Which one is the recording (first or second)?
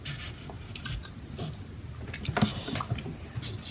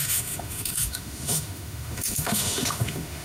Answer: first